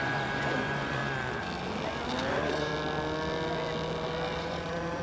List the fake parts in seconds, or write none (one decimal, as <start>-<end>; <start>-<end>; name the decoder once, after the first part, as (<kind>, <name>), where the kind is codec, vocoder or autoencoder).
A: 0.0-1.0 (vocoder, Vocos); 2.3-2.7; 4.4-5.0